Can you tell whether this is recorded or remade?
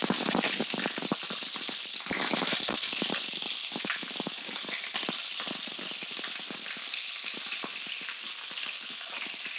recorded